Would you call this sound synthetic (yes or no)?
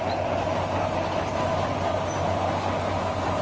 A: no